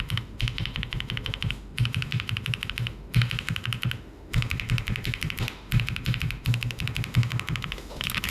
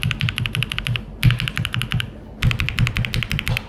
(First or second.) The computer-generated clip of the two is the first